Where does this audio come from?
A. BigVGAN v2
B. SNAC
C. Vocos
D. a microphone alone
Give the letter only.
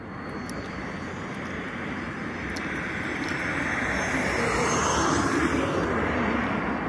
D